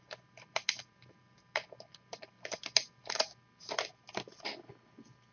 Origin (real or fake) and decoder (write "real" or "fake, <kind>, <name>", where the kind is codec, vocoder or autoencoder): real